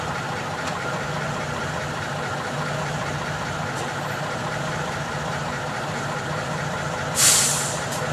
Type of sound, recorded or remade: recorded